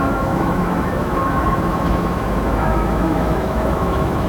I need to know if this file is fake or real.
fake